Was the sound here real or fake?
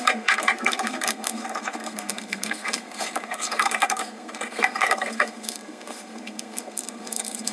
fake